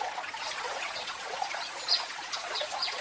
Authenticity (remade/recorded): remade